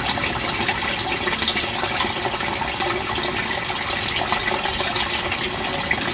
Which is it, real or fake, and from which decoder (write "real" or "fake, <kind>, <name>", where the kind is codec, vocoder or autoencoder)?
real